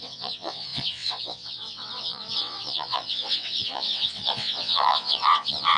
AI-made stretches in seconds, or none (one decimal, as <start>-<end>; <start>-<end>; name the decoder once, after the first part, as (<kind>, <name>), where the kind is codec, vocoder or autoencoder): 0.0-5.8 (vocoder, WaveNeXt)